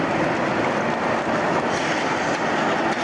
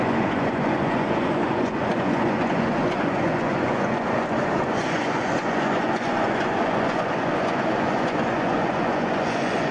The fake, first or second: second